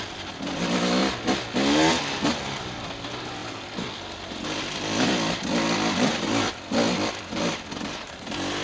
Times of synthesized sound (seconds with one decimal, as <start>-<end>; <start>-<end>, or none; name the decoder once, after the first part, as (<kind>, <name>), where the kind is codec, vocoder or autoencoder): 3.4-7.5 (vocoder, BigVGAN v2)